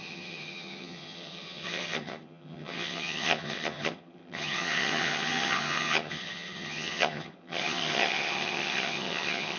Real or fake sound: fake